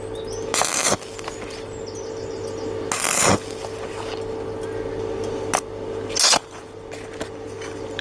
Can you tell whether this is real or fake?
real